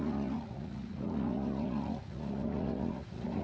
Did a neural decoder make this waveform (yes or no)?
yes